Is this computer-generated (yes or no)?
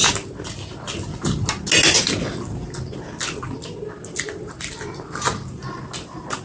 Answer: no